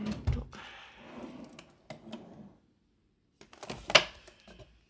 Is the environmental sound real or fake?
real